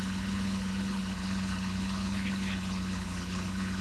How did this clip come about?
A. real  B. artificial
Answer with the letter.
B